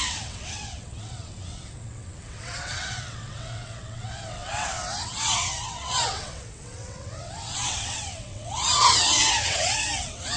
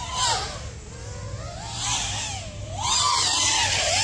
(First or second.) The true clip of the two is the second